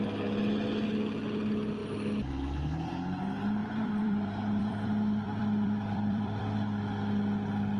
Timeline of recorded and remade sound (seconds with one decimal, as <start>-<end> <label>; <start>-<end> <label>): 0.0-3.6 recorded; 3.6-6.8 remade; 6.8-7.8 recorded

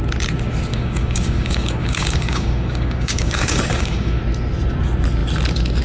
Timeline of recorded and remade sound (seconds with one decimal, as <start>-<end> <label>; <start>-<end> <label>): 0.0-0.7 recorded; 0.7-4.2 remade; 4.2-5.8 recorded

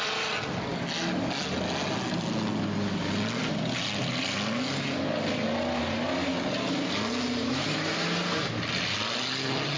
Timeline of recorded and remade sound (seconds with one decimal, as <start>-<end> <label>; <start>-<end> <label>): 0.0-9.8 recorded

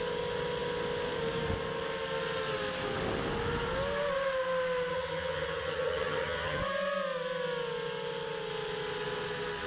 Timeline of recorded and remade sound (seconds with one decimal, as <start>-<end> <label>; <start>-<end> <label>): 0.0-4.9 recorded; 4.9-6.6 remade; 6.6-9.7 recorded

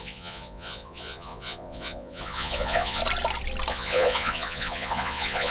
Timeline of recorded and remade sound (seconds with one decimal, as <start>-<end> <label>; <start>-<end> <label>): 0.0-3.0 remade; 3.0-3.7 recorded; 3.7-5.5 remade

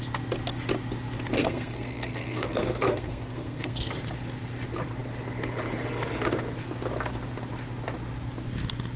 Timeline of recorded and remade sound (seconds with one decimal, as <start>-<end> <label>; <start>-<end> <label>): 0.0-1.4 recorded; 1.4-3.9 remade; 3.9-9.0 recorded

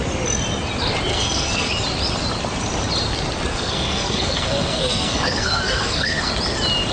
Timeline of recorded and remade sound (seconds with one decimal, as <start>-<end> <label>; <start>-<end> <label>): 0.0-1.1 recorded; 1.1-1.7 remade; 1.7-3.5 recorded; 3.5-6.3 remade; 6.3-6.9 recorded

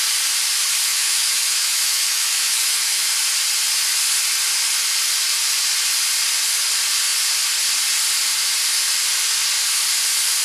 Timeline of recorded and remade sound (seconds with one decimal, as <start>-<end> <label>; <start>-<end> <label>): 0.0-0.9 recorded; 0.9-3.1 remade; 3.1-10.4 recorded